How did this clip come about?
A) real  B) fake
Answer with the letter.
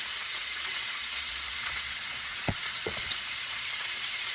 B